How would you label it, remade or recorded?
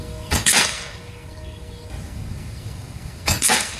remade